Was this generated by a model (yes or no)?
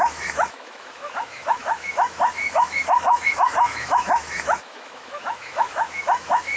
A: yes